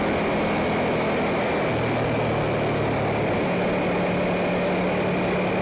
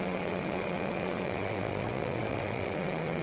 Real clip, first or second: first